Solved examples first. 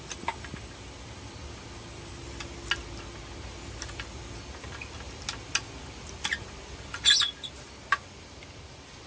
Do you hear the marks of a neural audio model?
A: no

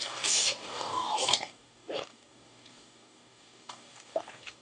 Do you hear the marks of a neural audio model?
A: yes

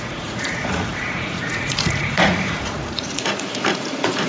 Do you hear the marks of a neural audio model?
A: yes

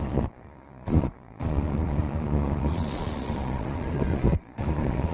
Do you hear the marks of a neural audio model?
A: yes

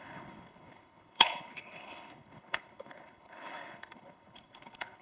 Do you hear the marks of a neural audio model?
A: yes